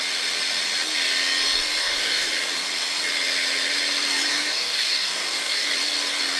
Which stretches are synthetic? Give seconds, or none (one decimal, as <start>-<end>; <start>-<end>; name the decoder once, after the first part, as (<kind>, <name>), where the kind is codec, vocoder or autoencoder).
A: 1.8-2.3 (codec, DAC); 4.3-5.7